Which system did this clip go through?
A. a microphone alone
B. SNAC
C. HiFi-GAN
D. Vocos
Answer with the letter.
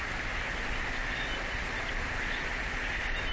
A